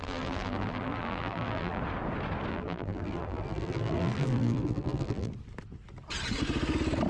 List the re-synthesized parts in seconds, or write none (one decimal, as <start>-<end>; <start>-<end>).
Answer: 0.0-1.8; 2.5-5.3